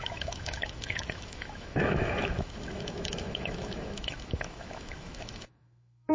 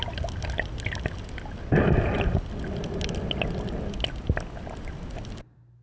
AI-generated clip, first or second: first